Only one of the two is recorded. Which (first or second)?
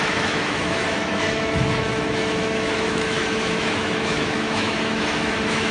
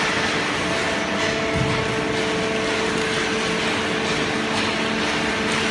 second